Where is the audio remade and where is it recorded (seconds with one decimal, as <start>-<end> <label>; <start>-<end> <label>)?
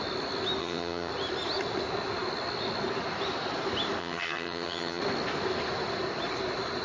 0.0-0.6 recorded; 0.6-1.1 remade; 1.1-4.0 recorded; 4.0-5.0 remade; 5.0-6.8 recorded